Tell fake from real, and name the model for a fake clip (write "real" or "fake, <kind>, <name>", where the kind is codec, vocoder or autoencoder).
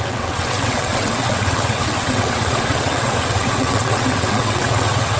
fake, vocoder, WaveNeXt